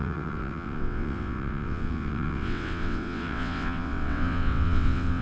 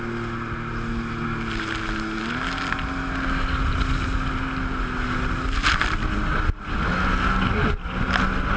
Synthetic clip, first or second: first